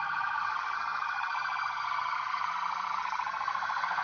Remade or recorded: remade